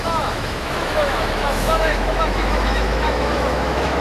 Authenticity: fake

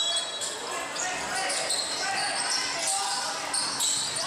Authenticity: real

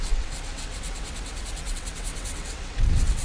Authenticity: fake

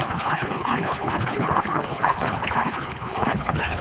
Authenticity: fake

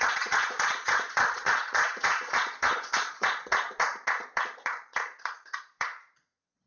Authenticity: fake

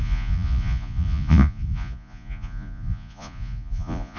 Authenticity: fake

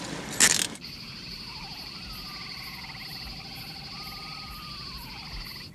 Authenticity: real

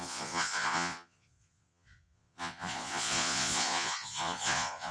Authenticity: fake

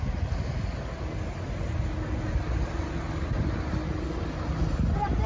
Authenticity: real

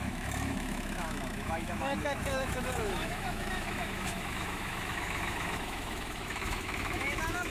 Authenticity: fake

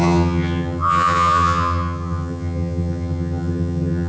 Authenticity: fake